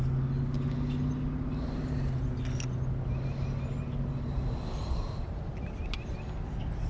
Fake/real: real